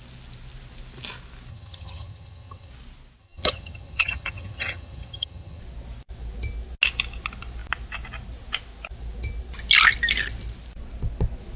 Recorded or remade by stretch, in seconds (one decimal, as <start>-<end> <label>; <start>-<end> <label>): 0.0-1.5 recorded; 1.5-2.7 remade; 2.7-3.2 recorded; 3.2-5.6 remade; 5.6-11.6 recorded